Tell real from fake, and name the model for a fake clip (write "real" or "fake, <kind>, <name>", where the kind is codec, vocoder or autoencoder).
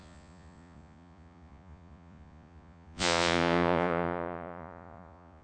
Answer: fake, vocoder, Vocos